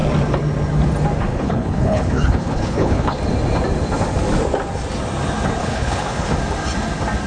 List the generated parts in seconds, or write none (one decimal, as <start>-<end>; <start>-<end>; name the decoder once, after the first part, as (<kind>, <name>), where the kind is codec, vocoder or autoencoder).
1.3-3.2 (codec, HILCodec); 5.6-6.3

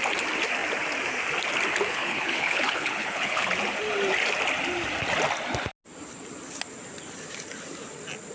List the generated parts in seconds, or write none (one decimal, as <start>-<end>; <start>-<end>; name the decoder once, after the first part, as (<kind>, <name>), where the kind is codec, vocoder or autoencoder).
1.9-3.5 (codec, HILCodec)